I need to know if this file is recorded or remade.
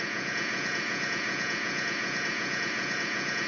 remade